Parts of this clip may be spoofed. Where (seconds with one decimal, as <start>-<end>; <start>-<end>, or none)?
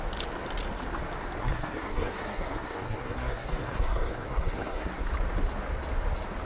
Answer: 1.4-5.1